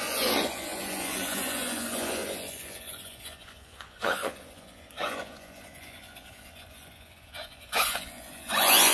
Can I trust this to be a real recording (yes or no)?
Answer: no